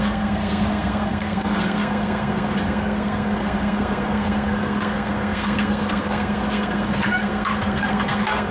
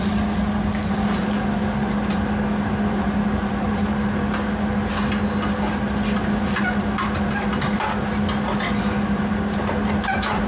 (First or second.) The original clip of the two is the second